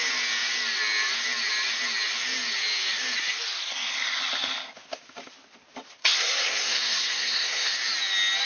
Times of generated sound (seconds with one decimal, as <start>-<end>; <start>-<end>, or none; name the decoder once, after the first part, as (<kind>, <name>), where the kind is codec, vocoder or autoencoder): 6.0-7.7 (codec, SNAC)